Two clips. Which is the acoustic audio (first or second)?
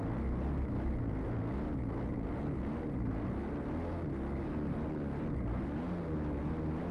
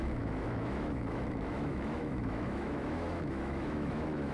first